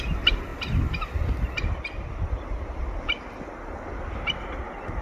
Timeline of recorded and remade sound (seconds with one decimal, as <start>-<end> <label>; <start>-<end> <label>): 0.0-5.0 recorded